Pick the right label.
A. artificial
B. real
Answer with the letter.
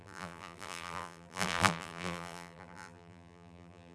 A